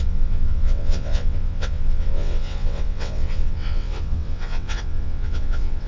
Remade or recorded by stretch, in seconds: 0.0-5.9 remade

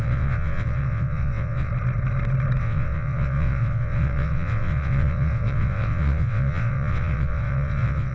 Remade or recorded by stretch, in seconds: 0.0-1.7 remade; 1.7-2.6 recorded; 2.6-8.1 remade

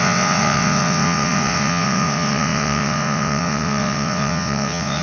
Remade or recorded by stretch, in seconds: 0.0-5.0 remade